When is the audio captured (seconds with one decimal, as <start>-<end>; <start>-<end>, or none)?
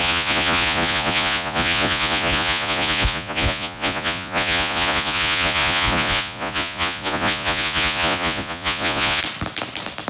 9.2-10.1